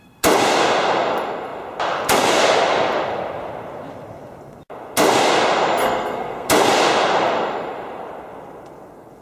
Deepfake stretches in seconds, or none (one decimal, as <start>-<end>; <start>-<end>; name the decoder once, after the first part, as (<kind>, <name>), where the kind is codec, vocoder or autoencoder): 5.8-6.5 (codec, SNAC)